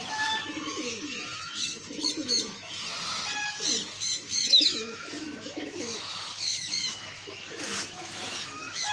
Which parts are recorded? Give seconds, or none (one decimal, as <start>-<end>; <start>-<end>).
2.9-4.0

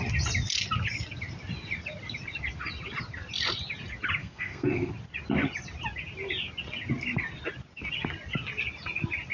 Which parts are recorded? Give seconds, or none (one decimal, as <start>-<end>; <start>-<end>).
0.0-4.2; 4.9-9.3

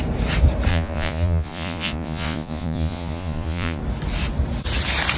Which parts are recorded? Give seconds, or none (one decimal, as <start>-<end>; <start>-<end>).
0.0-0.7; 3.8-5.2

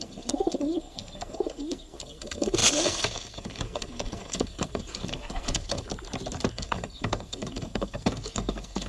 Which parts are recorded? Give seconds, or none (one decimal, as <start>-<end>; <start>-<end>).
5.9-6.5

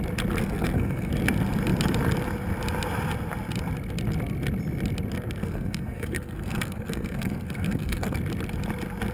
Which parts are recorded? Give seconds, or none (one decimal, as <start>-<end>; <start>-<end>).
0.0-0.4; 1.1-5.4; 8.2-9.1